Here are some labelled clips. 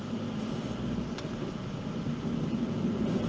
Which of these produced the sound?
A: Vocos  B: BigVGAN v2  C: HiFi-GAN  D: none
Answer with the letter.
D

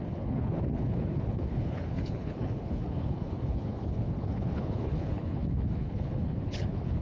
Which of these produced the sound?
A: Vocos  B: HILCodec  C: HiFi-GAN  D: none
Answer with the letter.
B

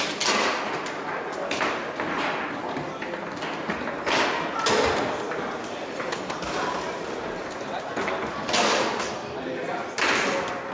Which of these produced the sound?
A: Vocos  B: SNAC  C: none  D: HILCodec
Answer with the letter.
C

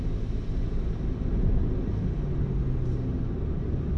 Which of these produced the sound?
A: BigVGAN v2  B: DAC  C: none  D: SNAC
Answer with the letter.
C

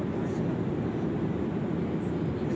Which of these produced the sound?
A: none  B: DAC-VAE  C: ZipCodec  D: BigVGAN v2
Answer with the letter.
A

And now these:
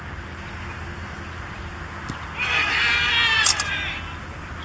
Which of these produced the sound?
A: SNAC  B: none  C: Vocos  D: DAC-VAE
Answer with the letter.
B